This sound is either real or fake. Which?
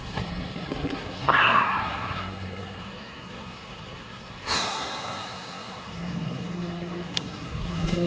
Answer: fake